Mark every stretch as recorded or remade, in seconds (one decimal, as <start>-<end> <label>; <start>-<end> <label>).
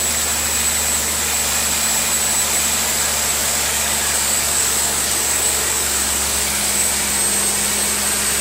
0.0-3.4 recorded; 3.4-6.9 remade; 6.9-8.4 recorded